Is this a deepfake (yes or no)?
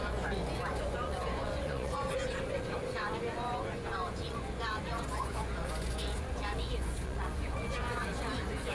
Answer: yes